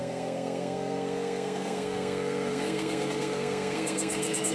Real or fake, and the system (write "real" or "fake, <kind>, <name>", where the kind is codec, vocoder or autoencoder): fake, codec, SNAC